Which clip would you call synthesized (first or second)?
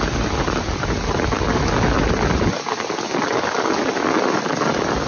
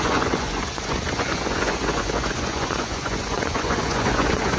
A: second